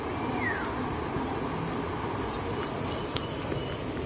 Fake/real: real